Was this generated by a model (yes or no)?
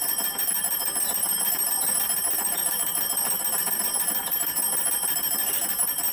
yes